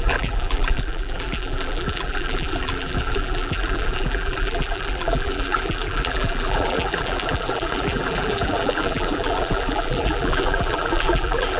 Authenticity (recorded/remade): remade